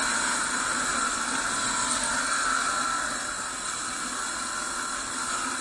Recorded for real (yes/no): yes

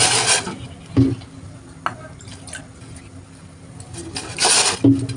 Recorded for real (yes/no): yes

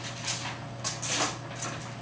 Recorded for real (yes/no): yes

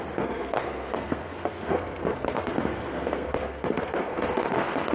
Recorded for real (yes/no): no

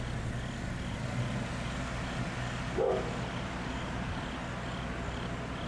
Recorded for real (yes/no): yes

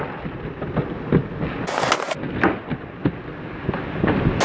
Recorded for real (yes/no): yes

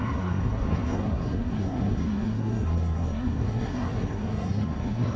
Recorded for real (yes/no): no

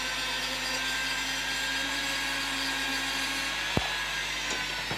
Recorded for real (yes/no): yes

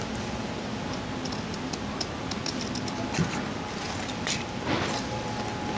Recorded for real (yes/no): yes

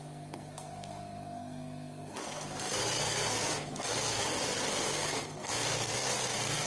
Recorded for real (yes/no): no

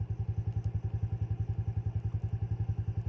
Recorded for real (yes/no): yes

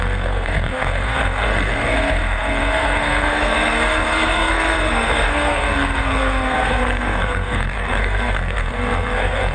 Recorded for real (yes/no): no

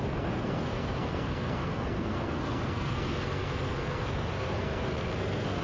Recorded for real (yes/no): no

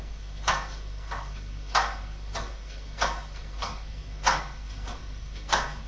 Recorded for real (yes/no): no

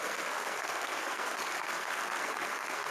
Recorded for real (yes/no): no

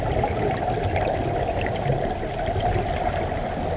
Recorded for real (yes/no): yes